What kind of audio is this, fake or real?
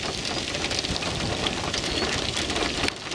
real